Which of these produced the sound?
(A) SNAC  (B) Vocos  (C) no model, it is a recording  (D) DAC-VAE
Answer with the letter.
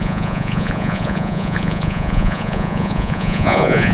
B